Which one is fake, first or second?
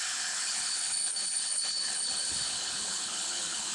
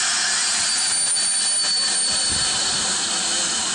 first